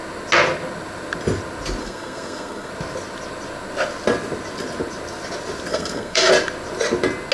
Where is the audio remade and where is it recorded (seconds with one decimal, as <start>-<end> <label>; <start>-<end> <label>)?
0.0-1.8 recorded; 1.8-2.7 remade; 2.7-5.7 recorded; 5.7-6.3 remade; 6.3-7.3 recorded